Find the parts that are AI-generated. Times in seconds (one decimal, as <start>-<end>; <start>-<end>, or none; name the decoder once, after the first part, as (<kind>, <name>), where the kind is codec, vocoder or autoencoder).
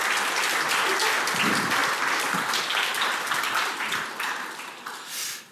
none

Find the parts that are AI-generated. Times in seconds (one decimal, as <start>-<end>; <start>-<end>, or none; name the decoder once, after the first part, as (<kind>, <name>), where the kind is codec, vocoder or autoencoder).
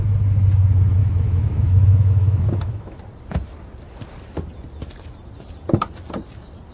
1.0-3.0 (autoencoder, DAC-VAE)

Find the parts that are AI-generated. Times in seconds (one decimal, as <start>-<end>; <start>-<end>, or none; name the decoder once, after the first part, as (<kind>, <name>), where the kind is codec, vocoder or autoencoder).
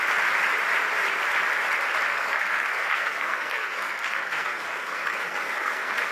2.1-6.1 (codec, SNAC)